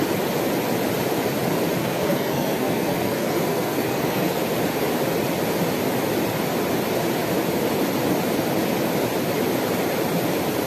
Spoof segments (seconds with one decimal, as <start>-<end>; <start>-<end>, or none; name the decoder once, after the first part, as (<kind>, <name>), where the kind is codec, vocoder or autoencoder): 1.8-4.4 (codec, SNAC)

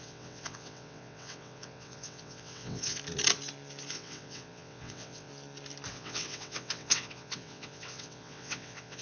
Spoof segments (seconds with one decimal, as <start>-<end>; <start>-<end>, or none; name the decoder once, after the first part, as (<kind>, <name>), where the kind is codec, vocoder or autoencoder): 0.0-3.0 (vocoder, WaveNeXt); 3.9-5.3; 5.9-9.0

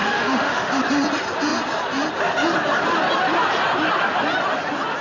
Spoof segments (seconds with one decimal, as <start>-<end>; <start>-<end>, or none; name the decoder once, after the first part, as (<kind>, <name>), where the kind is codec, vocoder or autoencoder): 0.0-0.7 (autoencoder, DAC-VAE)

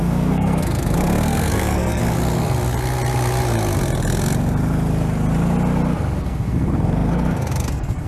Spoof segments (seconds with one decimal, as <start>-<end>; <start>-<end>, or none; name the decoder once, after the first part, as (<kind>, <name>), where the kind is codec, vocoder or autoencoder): 0.0-2.0 (codec, SNAC); 6.2-8.1

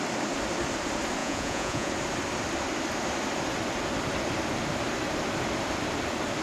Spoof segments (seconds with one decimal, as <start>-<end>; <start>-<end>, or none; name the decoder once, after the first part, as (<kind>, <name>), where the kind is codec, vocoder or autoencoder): 1.2-1.9 (vocoder, Vocos)